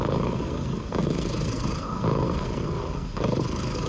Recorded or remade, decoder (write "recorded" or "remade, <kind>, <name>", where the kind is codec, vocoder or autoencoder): remade, codec, SNAC